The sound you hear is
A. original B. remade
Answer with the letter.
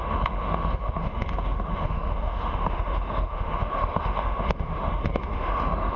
B